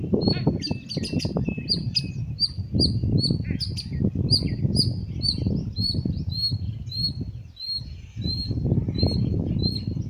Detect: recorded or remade recorded